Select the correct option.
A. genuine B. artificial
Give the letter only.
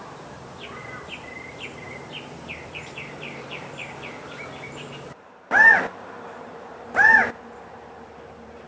B